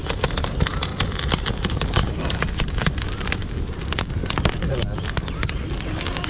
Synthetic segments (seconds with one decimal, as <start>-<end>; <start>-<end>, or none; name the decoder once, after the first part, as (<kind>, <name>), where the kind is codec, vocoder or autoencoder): 0.0-0.5 (vocoder, BigVGAN v2)